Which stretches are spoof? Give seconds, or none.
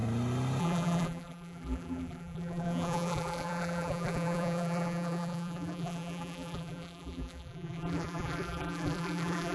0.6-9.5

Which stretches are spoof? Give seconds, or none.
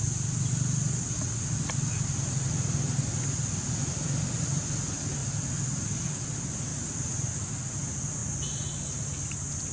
none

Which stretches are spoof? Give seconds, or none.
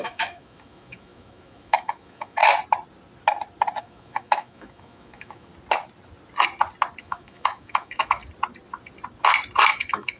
0.0-2.4; 3.8-5.5; 7.0-8.2; 9.7-10.2